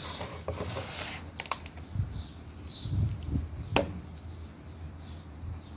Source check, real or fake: real